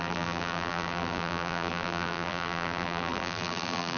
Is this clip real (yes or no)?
no